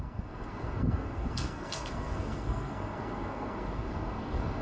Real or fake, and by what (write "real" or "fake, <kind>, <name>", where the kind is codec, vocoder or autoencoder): fake, codec, SNAC